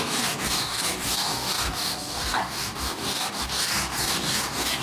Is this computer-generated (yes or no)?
yes